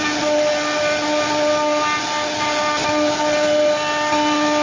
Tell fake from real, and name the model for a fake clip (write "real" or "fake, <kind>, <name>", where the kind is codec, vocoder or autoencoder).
real